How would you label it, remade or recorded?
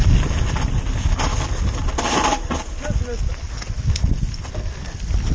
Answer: recorded